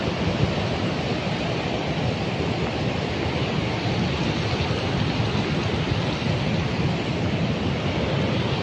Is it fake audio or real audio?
real